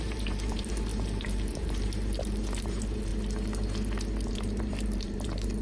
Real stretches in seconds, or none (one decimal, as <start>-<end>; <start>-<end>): 3.1-4.3